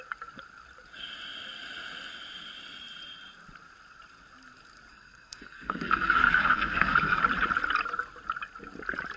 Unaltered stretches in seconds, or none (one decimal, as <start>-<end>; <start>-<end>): 0.0-4.9; 7.2-9.2